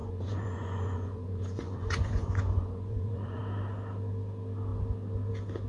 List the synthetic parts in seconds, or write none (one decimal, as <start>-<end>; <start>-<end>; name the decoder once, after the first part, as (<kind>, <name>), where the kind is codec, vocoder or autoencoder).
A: 0.0-3.4 (vocoder, Vocos)